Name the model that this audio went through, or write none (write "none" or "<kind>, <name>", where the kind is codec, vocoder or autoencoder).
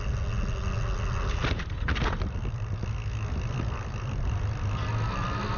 none